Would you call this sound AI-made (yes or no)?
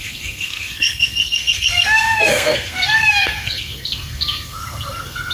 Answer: yes